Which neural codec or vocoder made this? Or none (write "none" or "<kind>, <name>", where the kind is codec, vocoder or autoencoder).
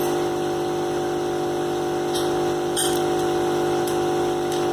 vocoder, BigVGAN v2